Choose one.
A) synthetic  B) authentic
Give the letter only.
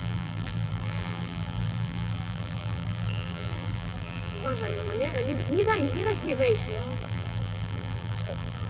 A